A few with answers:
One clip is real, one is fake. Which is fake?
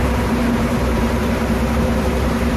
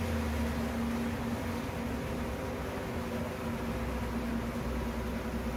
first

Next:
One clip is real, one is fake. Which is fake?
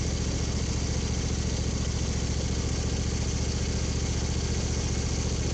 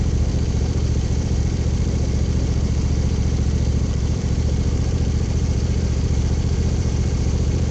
second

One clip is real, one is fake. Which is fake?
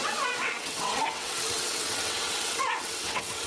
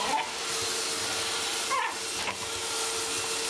first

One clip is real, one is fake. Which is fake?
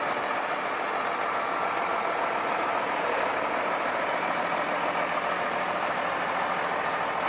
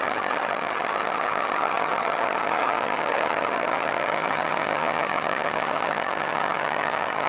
second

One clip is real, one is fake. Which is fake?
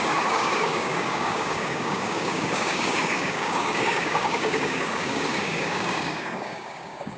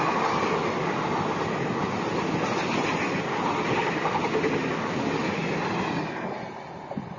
first